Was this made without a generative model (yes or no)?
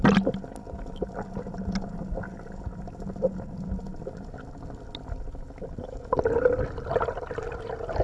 yes